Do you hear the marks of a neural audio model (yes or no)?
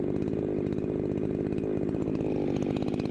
no